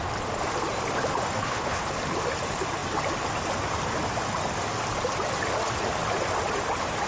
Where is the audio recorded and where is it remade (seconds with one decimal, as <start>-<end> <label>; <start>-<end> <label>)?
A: 0.0-1.4 recorded; 1.4-1.9 remade; 1.9-7.1 recorded